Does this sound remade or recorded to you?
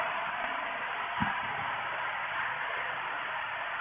recorded